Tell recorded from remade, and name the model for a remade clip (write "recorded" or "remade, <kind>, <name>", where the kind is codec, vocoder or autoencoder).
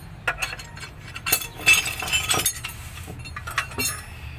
recorded